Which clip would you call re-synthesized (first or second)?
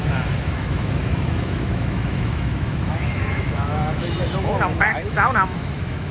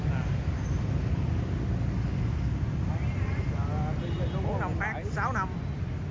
first